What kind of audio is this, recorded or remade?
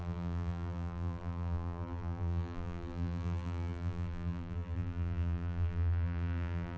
remade